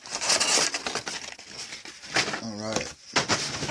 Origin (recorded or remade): recorded